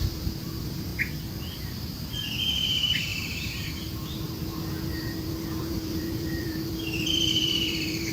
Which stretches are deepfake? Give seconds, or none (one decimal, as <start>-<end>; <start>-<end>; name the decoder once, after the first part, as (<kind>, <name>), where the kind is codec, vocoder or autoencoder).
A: 0.0-0.9 (vocoder, BigVGAN v2); 1.5-8.1